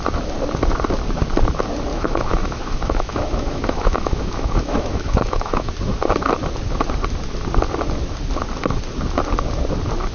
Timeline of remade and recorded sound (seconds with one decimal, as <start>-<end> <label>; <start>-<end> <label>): 0.0-1.9 recorded; 1.9-5.7 remade; 5.7-10.1 recorded